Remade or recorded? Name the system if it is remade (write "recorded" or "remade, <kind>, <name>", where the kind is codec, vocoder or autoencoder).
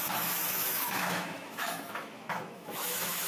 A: remade, autoencoder, DAC-VAE